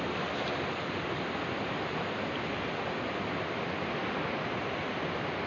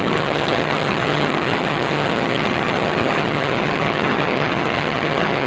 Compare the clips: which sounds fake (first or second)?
second